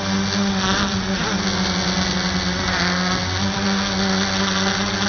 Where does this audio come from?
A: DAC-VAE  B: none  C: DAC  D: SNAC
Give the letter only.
B